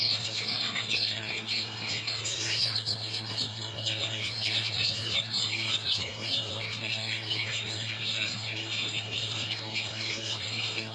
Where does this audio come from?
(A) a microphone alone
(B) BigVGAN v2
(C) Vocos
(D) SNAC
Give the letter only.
D